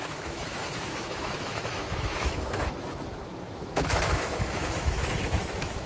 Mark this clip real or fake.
fake